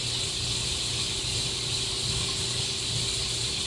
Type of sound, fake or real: real